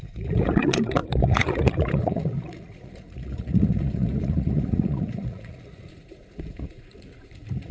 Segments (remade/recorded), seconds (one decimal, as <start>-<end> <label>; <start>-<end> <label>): 0.0-7.7 remade